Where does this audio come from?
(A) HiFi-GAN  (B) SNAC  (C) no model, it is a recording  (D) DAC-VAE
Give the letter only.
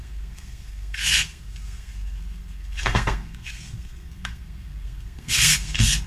B